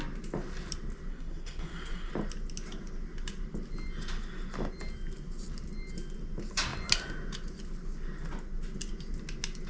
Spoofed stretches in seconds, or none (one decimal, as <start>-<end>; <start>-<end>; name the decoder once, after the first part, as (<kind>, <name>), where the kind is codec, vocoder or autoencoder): 1.1-2.1 (codec, SNAC)